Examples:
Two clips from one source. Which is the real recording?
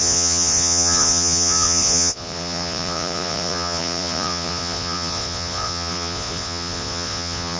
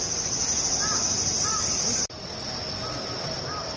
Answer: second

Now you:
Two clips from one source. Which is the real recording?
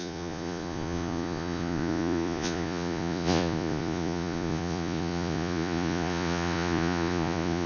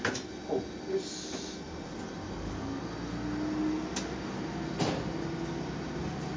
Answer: second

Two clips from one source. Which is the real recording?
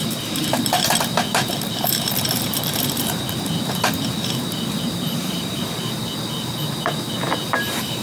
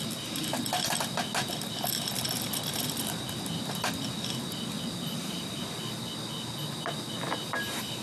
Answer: second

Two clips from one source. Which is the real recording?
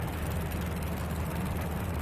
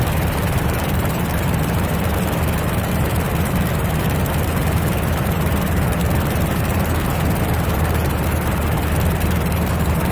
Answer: first